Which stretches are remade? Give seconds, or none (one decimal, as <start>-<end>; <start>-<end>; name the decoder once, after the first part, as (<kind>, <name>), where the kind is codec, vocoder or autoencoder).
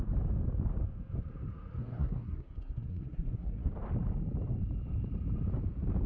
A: 1.8-3.7 (codec, SNAC)